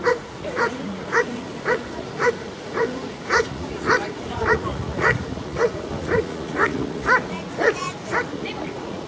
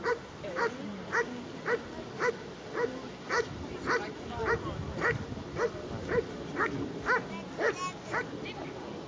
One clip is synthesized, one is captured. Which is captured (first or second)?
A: second